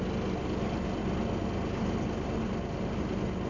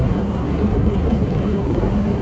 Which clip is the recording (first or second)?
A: first